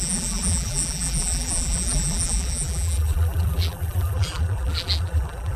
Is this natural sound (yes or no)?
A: no